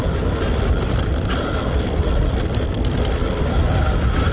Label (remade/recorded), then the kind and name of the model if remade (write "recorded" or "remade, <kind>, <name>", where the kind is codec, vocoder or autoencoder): recorded